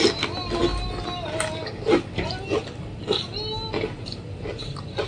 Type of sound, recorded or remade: recorded